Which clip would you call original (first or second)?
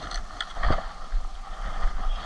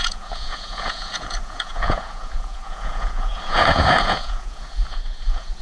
first